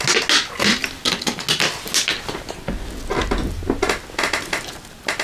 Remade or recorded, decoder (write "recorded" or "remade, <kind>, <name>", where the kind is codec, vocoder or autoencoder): recorded